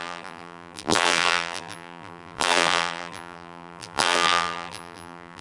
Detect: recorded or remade remade